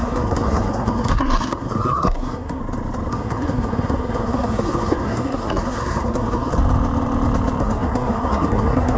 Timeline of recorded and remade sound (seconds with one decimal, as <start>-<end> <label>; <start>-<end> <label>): 0.0-2.6 remade; 2.6-3.1 recorded; 3.1-6.5 remade; 6.5-7.6 recorded; 7.6-9.0 remade